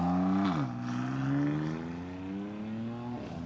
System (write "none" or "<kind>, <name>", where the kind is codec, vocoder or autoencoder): none